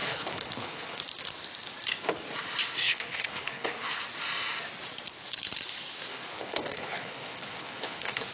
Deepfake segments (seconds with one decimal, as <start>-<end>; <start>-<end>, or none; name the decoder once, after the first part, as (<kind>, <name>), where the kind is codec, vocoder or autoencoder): 0.0-1.0 (codec, HILCodec); 2.8-4.0; 6.1-8.3

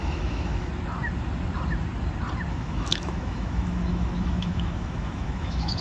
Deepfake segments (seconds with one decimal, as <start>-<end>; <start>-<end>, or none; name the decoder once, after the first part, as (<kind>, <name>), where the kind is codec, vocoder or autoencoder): 0.0-0.7 (autoencoder, DAC-VAE); 2.5-5.8

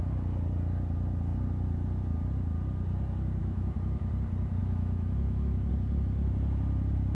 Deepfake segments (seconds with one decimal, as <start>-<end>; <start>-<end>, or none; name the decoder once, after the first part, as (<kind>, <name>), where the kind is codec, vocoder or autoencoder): 3.4-4.1 (autoencoder, DAC-VAE); 4.6-5.7

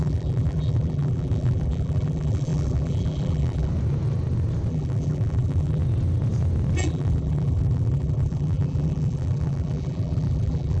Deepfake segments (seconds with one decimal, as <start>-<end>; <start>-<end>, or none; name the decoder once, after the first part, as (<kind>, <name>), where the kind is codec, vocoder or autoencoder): 0.0-3.7 (vocoder, BigVGAN v2); 4.7-5.8; 6.8-10.8

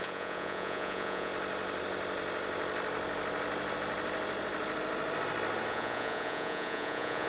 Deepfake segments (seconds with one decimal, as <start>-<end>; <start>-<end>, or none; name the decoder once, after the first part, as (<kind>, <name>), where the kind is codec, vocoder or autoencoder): 0.0-1.3 (vocoder, Vocos); 5.7-7.3

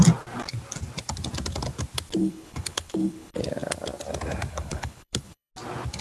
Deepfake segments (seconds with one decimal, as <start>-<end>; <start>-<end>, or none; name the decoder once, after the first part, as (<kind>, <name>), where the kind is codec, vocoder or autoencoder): 2.2-3.4 (codec, HILCodec); 4.5-5.5

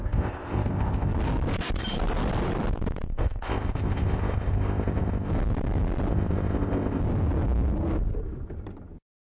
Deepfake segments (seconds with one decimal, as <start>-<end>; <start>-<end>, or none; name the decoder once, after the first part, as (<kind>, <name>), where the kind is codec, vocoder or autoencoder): 0.0-1.1 (codec, ZipCodec); 3.1-5.3; 6.1-7.0